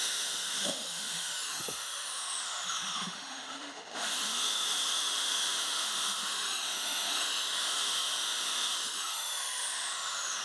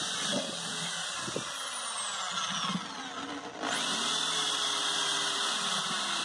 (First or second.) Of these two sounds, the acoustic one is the second